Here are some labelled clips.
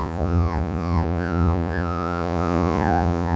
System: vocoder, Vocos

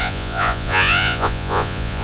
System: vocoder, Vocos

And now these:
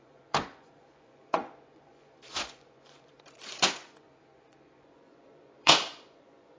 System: vocoder, Vocos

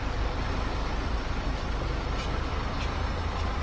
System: none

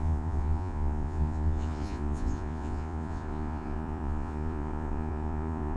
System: vocoder, Vocos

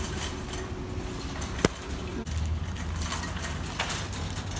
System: none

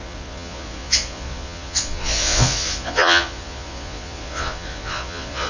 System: vocoder, Vocos